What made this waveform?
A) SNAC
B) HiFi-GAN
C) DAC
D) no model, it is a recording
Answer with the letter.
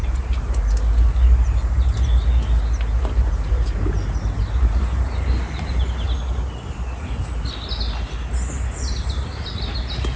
D